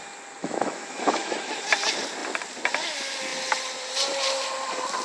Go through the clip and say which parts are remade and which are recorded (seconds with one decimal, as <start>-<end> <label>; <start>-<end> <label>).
0.0-0.4 recorded; 0.4-1.6 remade; 1.6-5.0 recorded